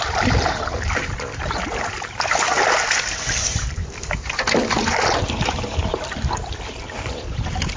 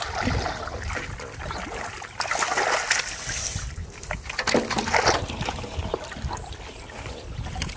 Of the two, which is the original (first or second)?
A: second